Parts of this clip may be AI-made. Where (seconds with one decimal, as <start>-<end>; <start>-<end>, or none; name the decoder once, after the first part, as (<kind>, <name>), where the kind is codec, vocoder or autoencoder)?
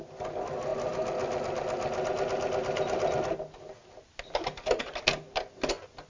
none